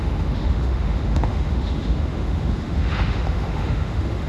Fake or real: fake